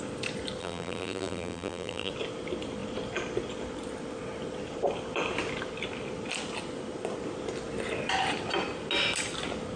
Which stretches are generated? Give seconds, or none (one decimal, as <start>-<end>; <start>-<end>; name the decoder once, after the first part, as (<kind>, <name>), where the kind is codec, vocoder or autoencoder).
0.6-2.1 (vocoder, BigVGAN v2)